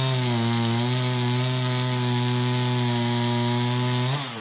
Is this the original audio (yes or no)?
yes